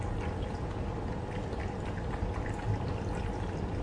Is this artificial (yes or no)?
no